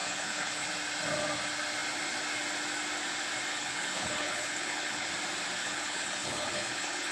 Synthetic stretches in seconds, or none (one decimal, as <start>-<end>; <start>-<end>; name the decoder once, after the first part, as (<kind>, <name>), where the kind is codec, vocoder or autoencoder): 0.0-0.7 (codec, HILCodec); 3.5-5.1; 5.6-7.1